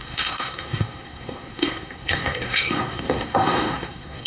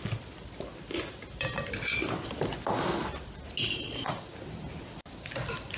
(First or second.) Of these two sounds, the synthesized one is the first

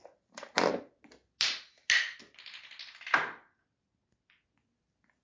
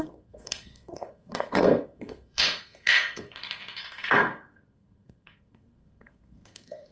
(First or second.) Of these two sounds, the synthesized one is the second